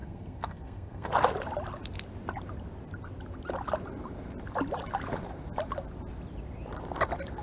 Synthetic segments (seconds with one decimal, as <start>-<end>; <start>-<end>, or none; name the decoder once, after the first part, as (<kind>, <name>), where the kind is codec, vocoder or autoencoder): 0.0-1.1 (codec, SNAC)